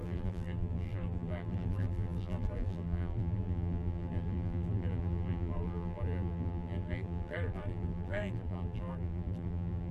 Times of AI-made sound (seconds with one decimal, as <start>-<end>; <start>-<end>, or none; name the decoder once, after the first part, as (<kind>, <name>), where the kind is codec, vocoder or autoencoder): 0.0-9.9 (vocoder, BigVGAN v2)